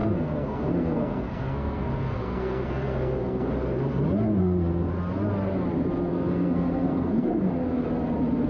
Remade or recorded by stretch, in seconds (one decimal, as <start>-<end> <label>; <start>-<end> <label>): 0.0-3.5 remade; 3.5-4.4 recorded; 4.4-4.9 remade; 4.9-6.1 recorded; 6.1-7.5 remade; 7.5-8.5 recorded